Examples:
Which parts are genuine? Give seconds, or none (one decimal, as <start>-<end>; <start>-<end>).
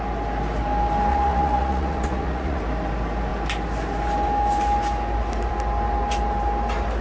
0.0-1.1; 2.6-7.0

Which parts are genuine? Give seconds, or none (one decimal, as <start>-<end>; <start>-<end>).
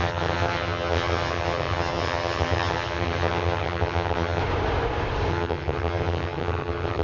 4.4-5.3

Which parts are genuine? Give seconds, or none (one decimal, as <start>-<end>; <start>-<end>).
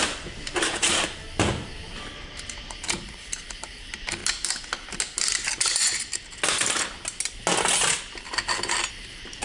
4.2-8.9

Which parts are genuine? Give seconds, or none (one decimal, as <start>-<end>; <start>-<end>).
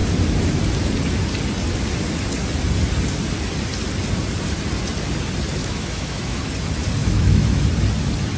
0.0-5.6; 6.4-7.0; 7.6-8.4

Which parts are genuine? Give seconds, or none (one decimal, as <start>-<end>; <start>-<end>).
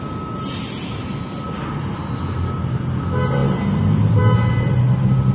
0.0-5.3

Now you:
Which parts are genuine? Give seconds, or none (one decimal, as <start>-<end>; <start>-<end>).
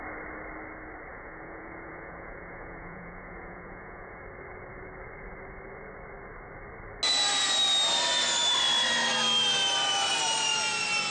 0.0-1.1; 4.2-11.1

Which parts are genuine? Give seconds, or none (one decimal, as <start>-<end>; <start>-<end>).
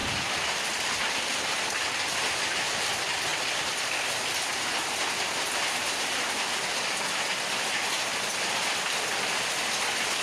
0.0-10.2